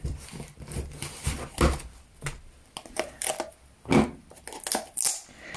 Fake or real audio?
real